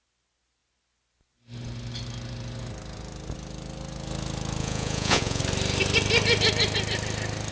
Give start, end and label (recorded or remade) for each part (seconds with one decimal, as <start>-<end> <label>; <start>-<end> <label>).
0.0-4.6 recorded; 4.6-5.4 remade; 5.4-7.5 recorded